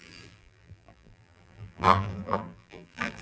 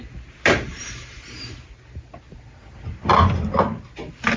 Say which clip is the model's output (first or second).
first